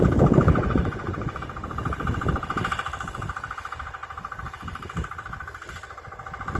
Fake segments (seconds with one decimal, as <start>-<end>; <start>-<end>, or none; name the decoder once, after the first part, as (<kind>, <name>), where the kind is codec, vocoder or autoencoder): 0.6-1.4 (vocoder, Vocos)